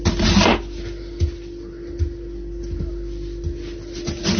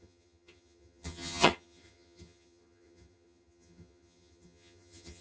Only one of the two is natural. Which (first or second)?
first